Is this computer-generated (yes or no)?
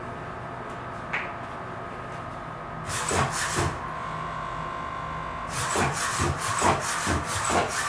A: no